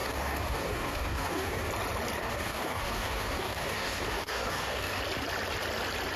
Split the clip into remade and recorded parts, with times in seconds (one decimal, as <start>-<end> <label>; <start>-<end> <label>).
0.0-1.7 remade; 1.7-2.2 recorded; 2.2-5.0 remade; 5.0-6.2 recorded